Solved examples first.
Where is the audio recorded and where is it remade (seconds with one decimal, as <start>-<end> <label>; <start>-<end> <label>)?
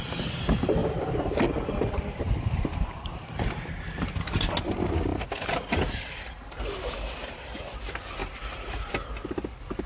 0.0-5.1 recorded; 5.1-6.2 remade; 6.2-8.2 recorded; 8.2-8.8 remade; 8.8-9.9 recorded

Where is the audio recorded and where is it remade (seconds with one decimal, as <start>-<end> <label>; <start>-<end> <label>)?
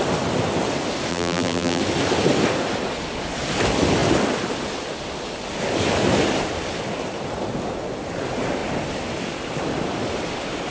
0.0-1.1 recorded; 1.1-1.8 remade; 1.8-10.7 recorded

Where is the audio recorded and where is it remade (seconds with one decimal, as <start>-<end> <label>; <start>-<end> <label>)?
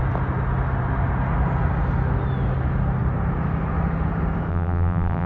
0.0-4.5 recorded; 4.5-5.3 remade